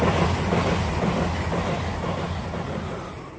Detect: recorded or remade recorded